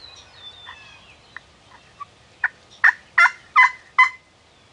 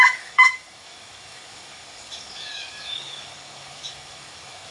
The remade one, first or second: second